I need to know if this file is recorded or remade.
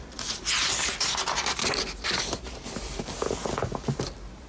recorded